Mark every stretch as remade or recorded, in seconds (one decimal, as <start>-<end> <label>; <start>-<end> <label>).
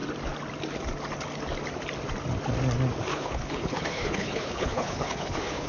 0.0-3.1 recorded; 3.1-5.7 remade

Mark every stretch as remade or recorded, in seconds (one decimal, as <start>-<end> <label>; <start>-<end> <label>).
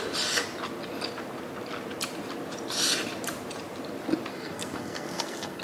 0.0-4.3 recorded; 4.3-5.6 remade